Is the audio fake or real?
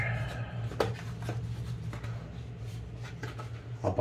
real